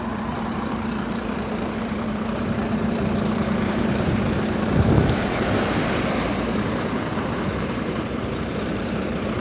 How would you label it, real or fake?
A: fake